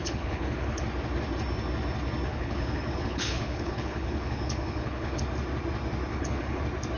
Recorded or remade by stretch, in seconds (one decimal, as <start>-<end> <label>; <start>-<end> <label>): 0.0-0.8 remade; 0.8-2.3 recorded; 2.3-5.2 remade; 5.2-6.1 recorded; 6.1-6.6 remade; 6.6-7.0 recorded